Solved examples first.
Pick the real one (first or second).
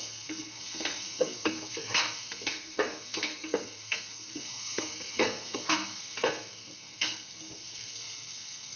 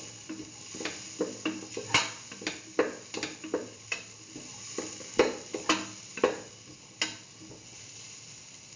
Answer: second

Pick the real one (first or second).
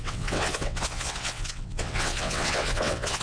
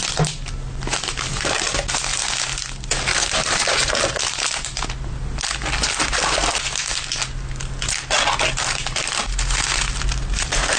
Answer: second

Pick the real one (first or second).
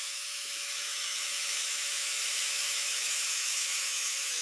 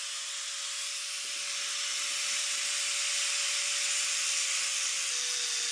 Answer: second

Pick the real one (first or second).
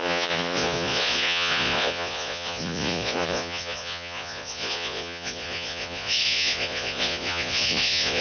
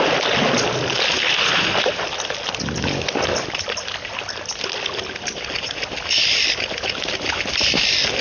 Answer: second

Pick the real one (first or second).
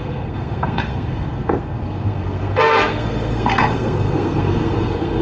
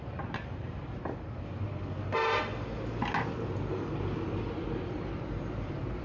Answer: second